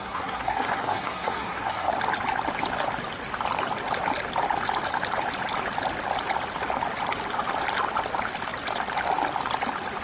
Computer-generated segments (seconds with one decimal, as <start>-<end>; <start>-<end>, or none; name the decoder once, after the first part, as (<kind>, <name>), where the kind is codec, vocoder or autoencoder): 0.0-1.9 (codec, SNAC)